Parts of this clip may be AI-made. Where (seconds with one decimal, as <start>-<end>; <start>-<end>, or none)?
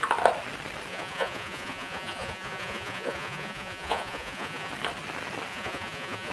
0.9-4.7; 5.5-6.3